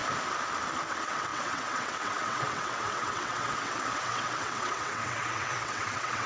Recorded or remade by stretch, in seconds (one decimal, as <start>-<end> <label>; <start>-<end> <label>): 0.0-0.9 recorded; 0.9-6.3 remade